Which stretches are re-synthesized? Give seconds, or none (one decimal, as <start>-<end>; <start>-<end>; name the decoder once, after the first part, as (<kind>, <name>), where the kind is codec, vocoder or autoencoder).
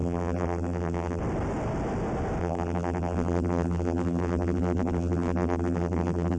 0.0-1.2 (vocoder, BigVGAN v2); 2.4-6.4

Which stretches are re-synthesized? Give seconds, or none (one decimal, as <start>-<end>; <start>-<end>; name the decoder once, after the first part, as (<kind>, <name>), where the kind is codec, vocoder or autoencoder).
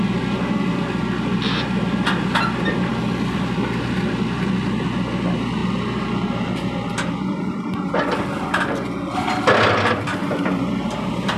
10.2-11.4 (vocoder, BigVGAN v2)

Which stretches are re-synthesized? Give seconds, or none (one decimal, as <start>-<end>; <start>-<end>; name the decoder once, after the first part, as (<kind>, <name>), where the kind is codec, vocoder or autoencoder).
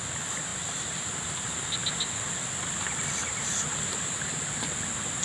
none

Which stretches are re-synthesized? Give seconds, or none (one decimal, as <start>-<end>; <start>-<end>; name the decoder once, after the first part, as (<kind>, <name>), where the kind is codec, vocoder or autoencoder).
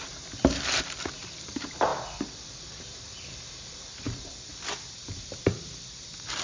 0.0-6.4 (vocoder, BigVGAN v2)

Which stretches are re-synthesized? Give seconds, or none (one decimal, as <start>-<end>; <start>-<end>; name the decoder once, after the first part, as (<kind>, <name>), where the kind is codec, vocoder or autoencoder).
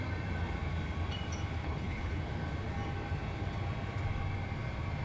1.6-2.2 (codec, HILCodec)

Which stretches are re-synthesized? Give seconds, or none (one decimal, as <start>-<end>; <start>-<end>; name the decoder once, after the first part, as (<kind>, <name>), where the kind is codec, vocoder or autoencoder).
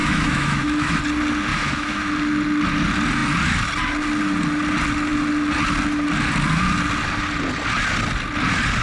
0.0-1.0 (autoencoder, DAC-VAE); 1.5-2.1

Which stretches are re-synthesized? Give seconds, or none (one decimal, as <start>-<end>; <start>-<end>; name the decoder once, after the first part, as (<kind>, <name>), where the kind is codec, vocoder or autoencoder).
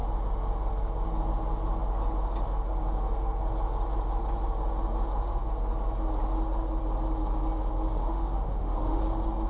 8.0-9.0 (autoencoder, DAC-VAE)